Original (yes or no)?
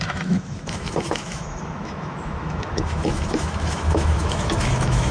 no